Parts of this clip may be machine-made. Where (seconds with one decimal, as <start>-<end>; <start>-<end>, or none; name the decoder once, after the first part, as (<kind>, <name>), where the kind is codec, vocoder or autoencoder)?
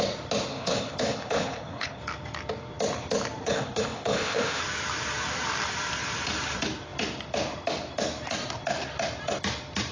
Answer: 0.5-2.0 (codec, HILCodec); 3.4-4.6